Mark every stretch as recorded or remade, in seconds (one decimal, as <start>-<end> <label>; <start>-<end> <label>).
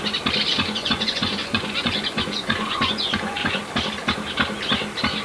0.0-0.5 recorded; 0.5-3.6 remade; 3.6-5.2 recorded